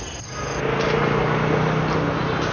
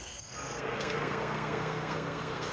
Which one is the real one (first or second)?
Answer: first